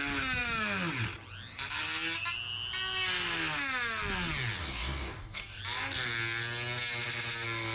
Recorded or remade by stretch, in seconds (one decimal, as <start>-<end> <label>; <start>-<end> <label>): 0.0-4.6 recorded; 4.6-5.6 remade; 5.6-7.7 recorded